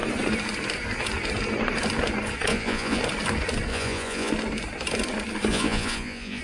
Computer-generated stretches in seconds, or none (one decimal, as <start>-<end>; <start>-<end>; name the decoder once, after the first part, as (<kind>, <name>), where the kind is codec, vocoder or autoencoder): 2.5-3.0 (vocoder, Vocos); 3.7-4.3; 5.5-6.4